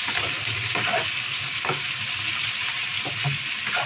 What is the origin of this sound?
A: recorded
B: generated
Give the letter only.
A